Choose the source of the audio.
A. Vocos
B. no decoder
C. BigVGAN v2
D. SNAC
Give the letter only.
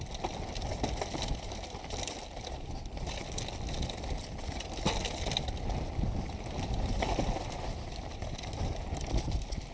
B